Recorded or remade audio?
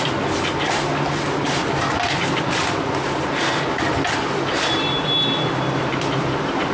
recorded